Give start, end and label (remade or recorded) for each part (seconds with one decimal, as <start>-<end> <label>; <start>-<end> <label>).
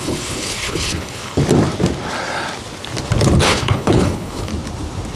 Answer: 0.0-1.4 remade; 1.4-3.4 recorded; 3.4-4.5 remade; 4.5-5.2 recorded